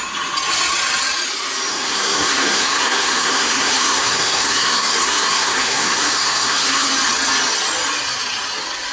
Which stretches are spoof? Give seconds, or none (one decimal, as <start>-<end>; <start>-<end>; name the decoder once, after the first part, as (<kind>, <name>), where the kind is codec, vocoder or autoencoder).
1.7-6.9 (codec, SNAC)